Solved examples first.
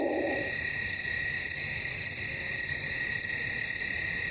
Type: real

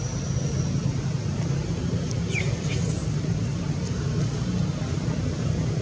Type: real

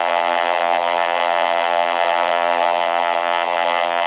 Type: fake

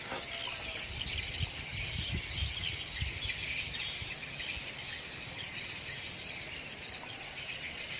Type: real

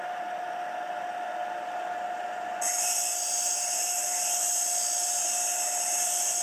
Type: real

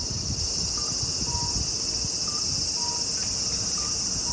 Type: real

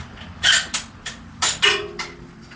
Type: fake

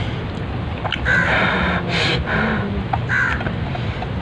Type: real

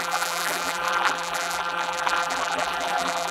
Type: fake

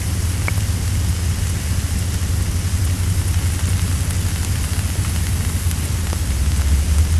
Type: real